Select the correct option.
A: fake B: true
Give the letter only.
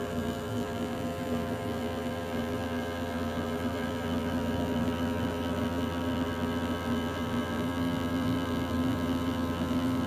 A